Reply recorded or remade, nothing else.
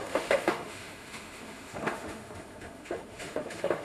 remade